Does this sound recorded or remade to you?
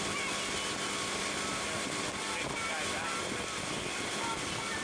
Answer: recorded